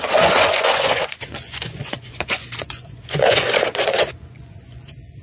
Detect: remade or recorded remade